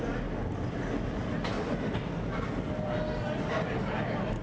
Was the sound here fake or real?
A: real